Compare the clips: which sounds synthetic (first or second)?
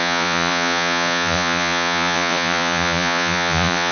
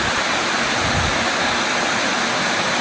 first